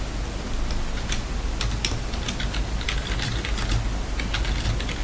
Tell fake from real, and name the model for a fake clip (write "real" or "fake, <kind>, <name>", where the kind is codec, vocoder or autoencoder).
real